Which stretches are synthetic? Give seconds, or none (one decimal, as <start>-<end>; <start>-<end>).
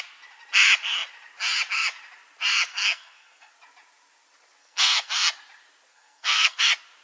2.7-3.5; 4.6-5.1; 5.9-6.6